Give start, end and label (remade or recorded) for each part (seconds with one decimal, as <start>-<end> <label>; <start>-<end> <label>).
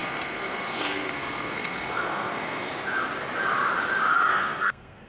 0.0-2.7 remade; 2.7-4.3 recorded; 4.3-5.1 remade